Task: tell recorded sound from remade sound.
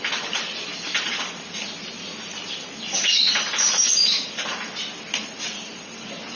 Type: recorded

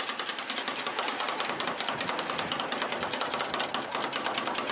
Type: recorded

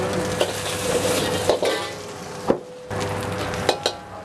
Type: recorded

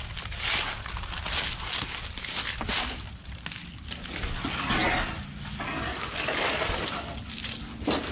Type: recorded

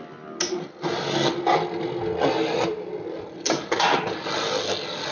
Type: recorded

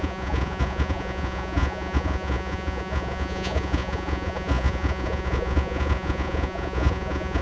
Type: remade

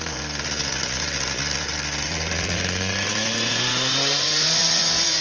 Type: remade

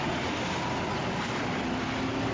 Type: recorded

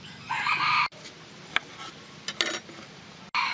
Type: recorded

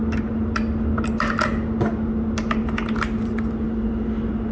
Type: recorded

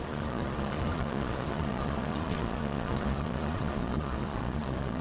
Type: remade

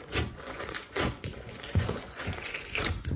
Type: remade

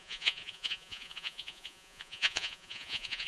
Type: remade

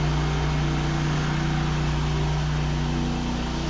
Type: recorded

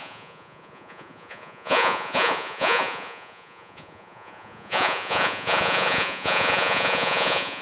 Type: remade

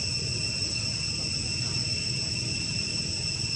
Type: recorded